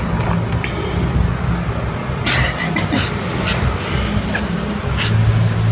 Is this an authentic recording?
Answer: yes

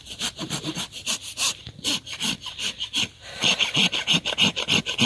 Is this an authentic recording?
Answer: yes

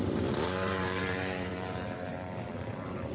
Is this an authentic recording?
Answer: no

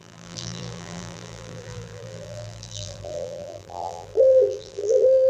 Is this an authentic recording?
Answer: no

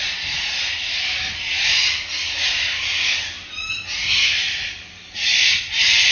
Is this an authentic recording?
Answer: yes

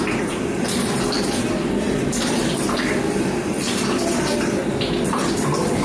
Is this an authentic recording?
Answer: no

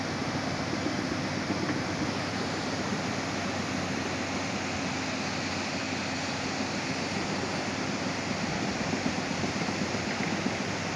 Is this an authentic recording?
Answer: yes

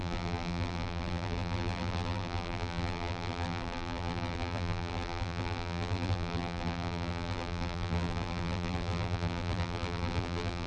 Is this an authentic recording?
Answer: no